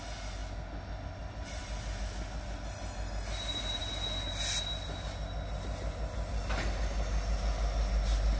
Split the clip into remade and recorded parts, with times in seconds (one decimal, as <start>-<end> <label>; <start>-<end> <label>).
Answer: 0.0-8.4 recorded